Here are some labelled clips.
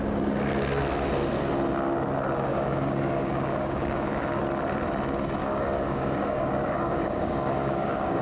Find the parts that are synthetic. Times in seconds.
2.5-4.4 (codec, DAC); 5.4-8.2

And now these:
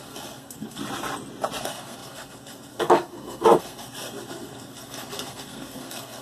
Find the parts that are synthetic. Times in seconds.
0.0-0.8 (codec, SNAC); 1.6-6.2